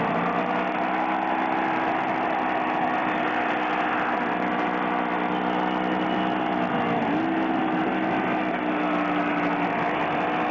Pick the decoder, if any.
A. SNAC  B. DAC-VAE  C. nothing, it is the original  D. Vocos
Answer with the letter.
C